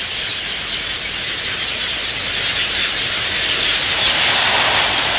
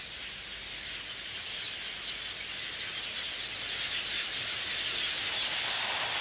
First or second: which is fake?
first